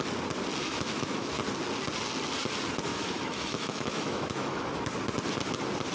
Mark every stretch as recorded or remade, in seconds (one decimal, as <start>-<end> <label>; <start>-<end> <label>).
0.0-0.6 recorded; 0.6-1.3 remade; 1.3-2.9 recorded; 2.9-4.6 remade; 4.6-5.9 recorded